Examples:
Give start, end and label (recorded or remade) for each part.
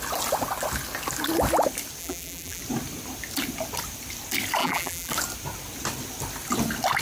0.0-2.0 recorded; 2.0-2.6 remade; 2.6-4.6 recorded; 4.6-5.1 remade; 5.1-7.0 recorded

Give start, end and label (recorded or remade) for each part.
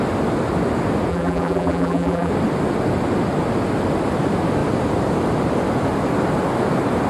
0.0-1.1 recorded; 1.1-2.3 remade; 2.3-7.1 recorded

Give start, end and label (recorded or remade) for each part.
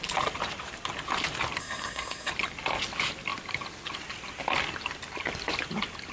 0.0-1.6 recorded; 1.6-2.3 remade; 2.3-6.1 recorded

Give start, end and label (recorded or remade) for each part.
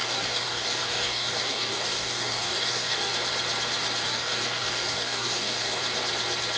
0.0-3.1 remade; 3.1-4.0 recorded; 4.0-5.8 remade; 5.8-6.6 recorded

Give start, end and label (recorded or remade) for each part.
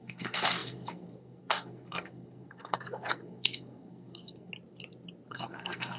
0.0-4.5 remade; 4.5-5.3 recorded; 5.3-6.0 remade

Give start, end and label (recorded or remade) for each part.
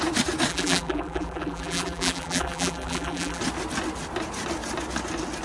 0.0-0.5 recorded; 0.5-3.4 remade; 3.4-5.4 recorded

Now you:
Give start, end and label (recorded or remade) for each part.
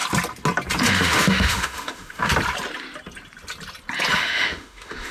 0.0-0.9 recorded; 0.9-2.3 remade; 2.3-4.1 recorded; 4.1-5.1 remade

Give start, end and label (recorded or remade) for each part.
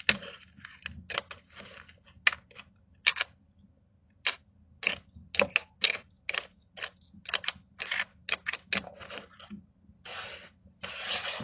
0.0-11.4 recorded